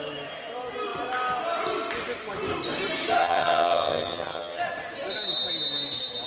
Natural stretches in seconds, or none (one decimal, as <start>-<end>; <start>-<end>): 0.0-3.2; 4.6-6.3